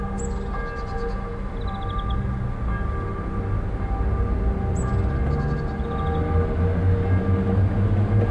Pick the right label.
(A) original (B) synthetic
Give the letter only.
A